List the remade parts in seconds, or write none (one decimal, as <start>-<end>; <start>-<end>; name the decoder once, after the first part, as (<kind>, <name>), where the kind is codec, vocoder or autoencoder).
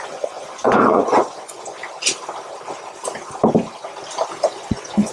0.0-1.8 (vocoder, Vocos); 4.4-5.1